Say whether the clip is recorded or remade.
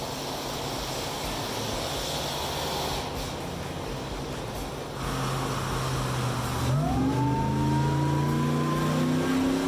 recorded